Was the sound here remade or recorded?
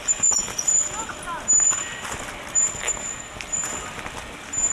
recorded